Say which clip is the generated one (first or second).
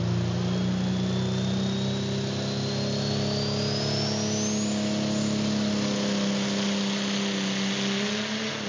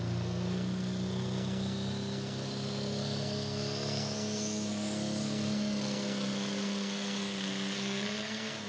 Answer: second